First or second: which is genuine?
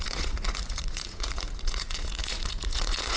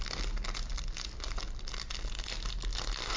second